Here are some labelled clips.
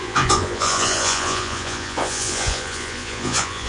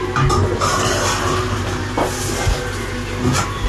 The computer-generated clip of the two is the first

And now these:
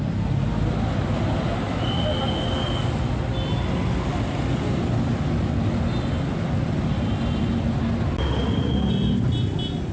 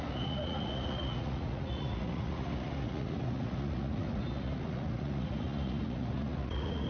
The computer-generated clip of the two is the second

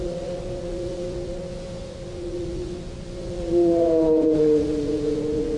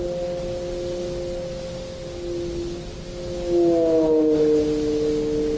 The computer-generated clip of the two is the first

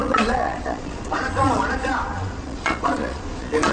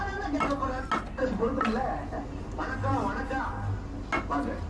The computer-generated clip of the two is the first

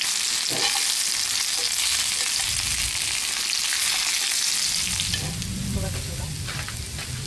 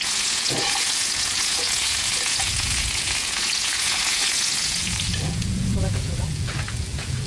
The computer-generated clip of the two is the second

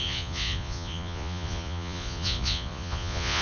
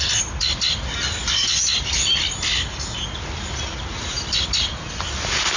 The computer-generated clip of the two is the first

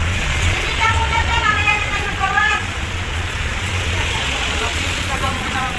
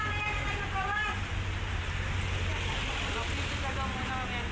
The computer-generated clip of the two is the first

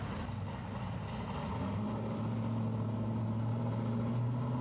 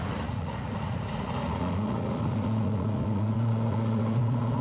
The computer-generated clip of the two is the second